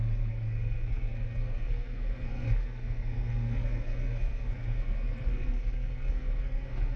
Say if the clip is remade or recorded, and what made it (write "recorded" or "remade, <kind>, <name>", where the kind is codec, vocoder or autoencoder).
remade, codec, SNAC